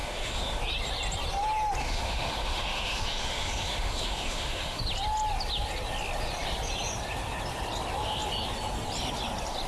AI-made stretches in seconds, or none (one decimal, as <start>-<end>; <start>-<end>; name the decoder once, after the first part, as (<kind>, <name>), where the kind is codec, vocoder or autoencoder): 0.0-0.6 (autoencoder, DAC-VAE); 1.8-4.8